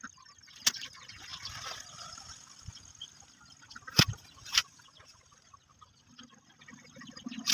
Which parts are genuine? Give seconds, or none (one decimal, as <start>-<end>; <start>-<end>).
0.0-7.5